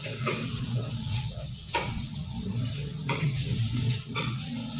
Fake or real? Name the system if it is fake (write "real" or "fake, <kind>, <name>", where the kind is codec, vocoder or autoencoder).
fake, vocoder, WaveNeXt